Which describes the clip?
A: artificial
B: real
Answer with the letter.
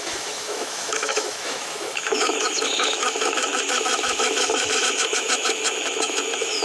A